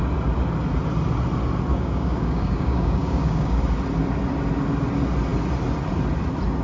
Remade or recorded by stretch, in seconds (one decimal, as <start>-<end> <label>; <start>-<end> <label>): 0.0-1.7 recorded; 1.7-3.6 remade; 3.6-6.6 recorded

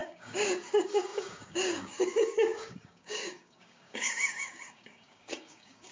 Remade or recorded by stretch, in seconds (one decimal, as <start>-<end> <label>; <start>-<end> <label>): 0.0-5.9 remade